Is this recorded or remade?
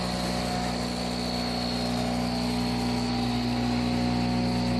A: recorded